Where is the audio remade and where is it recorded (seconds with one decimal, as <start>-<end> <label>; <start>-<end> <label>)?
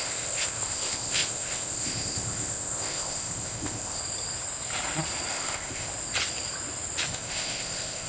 0.0-4.0 remade; 4.0-5.3 recorded; 5.3-5.9 remade; 5.9-7.1 recorded; 7.1-8.1 remade